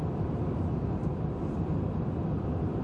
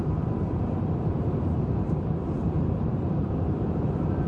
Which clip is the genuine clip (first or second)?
first